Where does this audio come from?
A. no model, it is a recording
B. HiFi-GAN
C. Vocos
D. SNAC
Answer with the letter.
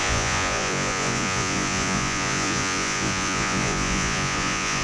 C